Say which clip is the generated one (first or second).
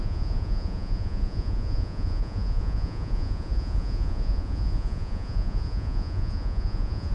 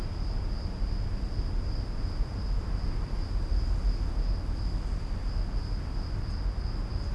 first